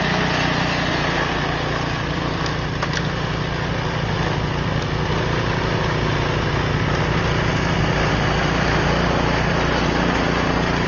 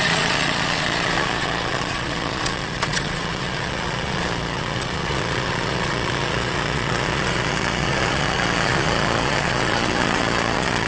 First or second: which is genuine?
first